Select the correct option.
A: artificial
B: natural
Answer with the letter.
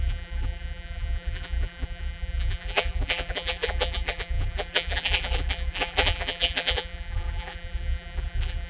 A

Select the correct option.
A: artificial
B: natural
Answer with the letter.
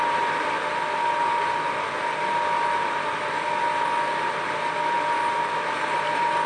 B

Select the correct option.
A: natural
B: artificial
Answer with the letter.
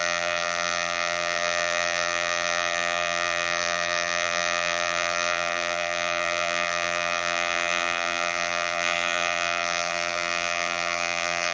B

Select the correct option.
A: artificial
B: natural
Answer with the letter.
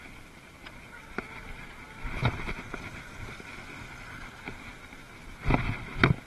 B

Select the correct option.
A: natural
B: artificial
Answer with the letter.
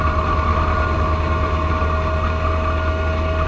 A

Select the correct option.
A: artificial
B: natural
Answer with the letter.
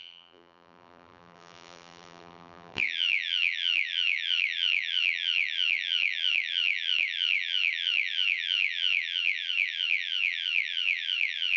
A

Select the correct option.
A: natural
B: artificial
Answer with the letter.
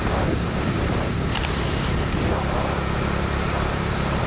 B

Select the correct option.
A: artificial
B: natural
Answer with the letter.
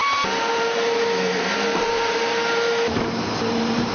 A